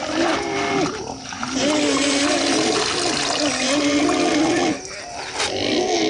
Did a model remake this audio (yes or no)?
no